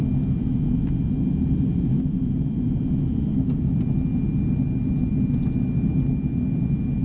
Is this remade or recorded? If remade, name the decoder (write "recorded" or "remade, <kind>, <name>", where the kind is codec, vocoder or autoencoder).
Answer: recorded